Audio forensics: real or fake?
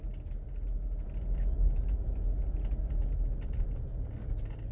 real